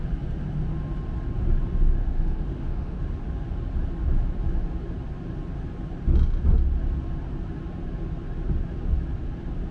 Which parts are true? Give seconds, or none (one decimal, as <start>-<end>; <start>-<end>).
0.0-2.0; 3.0-9.7